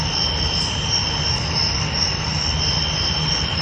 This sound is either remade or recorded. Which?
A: recorded